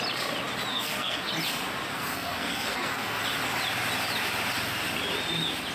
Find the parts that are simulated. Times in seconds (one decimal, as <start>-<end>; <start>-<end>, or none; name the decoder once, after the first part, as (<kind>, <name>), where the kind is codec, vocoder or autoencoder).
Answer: 0.7-1.3 (codec, SNAC); 1.9-3.2